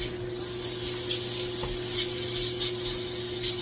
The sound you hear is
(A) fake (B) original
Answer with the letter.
B